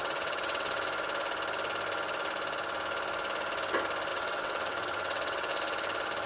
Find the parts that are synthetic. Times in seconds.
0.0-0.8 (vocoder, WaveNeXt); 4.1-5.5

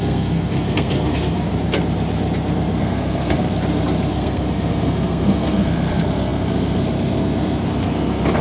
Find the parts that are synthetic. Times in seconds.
0.0-1.5 (codec, SNAC); 2.8-3.5; 4.1-8.4